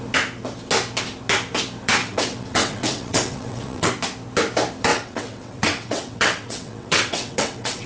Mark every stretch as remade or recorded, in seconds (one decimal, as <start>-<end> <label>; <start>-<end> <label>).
0.0-2.0 recorded; 2.0-3.9 remade; 3.9-4.9 recorded; 4.9-7.9 remade

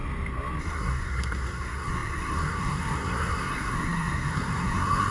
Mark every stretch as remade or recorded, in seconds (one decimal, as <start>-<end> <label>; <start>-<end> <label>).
0.0-0.6 recorded; 0.6-5.1 remade